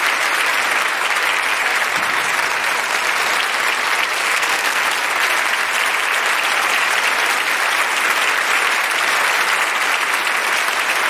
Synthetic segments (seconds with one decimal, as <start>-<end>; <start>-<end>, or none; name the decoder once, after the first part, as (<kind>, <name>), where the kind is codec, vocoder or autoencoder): 4.2-4.8 (codec, SNAC)